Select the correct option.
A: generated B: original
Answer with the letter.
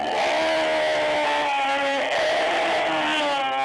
B